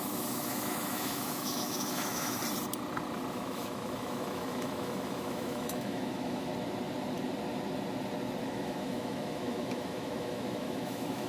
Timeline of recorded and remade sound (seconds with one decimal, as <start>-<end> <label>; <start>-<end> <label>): 0.0-2.4 remade; 2.4-3.3 recorded; 3.3-6.5 remade; 6.5-8.5 recorded; 8.5-11.3 remade